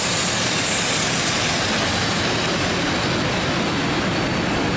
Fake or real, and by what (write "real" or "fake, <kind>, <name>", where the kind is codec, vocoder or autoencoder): real